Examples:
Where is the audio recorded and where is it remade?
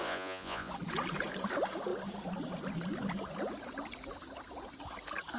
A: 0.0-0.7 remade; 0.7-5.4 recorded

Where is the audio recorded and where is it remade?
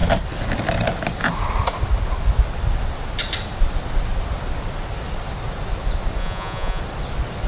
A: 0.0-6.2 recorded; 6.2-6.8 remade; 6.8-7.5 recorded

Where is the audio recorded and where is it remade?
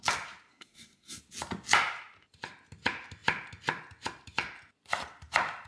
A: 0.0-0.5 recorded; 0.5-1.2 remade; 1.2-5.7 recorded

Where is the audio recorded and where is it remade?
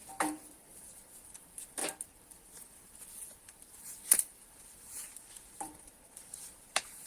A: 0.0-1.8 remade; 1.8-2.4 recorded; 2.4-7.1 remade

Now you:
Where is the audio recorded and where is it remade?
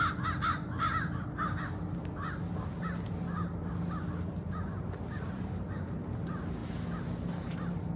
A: 0.0-8.0 recorded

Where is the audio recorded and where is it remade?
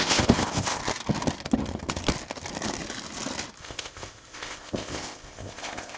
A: 0.0-0.8 remade; 0.8-3.6 recorded; 3.6-6.0 remade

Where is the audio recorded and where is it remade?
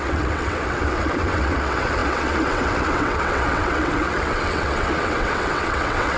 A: 0.0-6.2 remade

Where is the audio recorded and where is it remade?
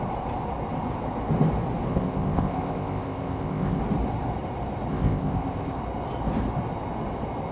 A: 0.0-1.9 recorded; 1.9-3.8 remade; 3.8-4.9 recorded; 4.9-5.8 remade; 5.8-7.5 recorded